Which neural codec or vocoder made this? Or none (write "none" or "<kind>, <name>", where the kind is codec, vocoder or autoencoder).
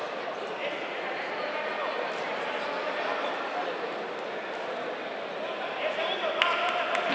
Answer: none